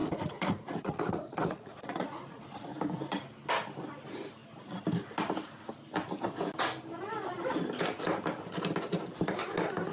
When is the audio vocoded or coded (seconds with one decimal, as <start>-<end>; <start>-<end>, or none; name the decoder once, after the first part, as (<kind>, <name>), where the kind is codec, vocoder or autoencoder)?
0.0-2.4 (vocoder, Vocos)